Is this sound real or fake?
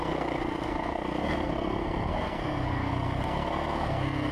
fake